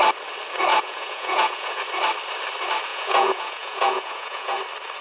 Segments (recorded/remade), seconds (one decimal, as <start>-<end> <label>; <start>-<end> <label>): 0.0-0.7 recorded; 0.7-1.8 remade; 1.8-2.9 recorded; 2.9-4.6 remade; 4.6-5.0 recorded

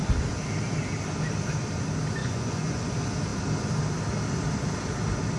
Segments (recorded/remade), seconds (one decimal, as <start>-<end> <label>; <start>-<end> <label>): 0.0-2.2 recorded; 2.2-2.9 remade; 2.9-5.4 recorded

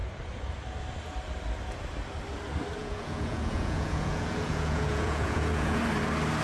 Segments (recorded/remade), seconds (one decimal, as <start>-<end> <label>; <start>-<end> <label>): 0.0-2.8 recorded; 2.8-5.8 remade; 5.8-6.4 recorded

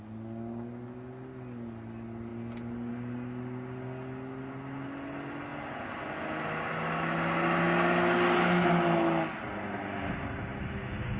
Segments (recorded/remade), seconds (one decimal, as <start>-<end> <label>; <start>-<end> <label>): 0.0-11.2 recorded

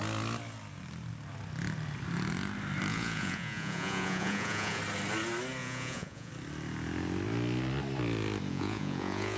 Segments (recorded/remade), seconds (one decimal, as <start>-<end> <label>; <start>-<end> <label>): 0.0-2.9 recorded; 2.9-4.8 remade; 4.8-5.6 recorded; 5.6-6.3 remade; 6.3-8.5 recorded; 8.5-9.4 remade